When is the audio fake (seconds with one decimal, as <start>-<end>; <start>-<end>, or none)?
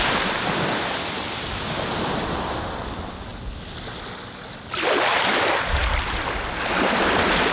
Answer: none